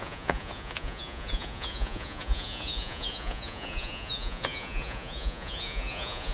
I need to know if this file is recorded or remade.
remade